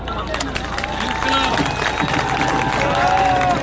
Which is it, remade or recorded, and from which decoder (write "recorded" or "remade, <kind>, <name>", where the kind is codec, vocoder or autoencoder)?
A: recorded